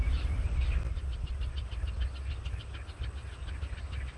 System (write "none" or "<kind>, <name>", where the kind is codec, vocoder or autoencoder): none